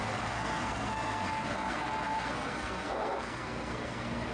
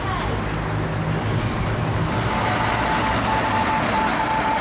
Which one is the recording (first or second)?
second